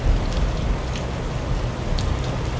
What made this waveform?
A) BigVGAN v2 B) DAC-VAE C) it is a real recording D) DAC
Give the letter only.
C